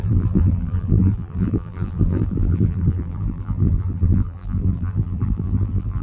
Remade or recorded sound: remade